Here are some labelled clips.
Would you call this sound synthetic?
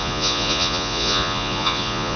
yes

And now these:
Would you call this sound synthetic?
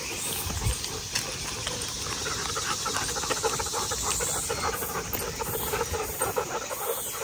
no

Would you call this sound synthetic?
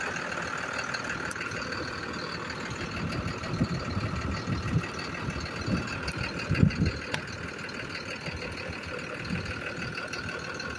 no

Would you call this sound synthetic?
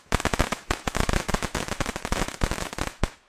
yes